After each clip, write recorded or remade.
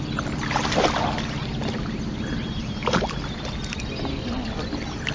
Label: recorded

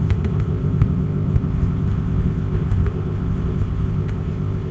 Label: remade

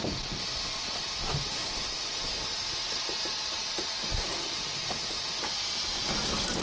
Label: recorded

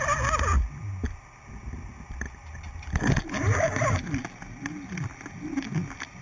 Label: recorded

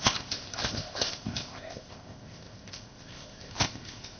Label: remade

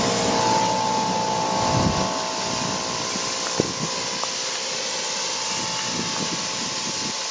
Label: recorded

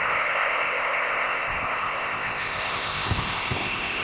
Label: remade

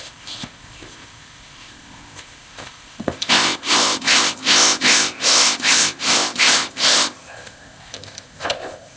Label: remade